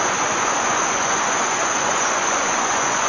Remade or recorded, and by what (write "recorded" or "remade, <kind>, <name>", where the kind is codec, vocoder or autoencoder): remade, vocoder, Vocos